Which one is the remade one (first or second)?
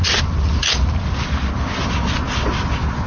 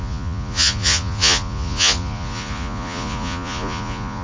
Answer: second